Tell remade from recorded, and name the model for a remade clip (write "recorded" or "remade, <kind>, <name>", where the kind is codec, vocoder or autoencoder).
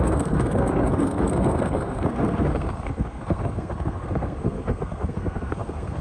remade, codec, SNAC